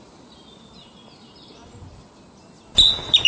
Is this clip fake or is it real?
real